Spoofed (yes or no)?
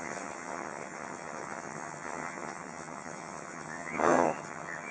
yes